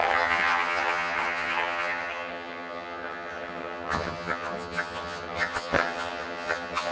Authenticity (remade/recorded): remade